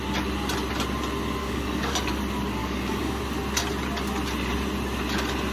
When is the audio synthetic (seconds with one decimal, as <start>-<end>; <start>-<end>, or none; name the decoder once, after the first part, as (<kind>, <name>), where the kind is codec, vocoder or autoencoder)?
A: 1.4-2.1 (codec, DAC); 2.6-3.2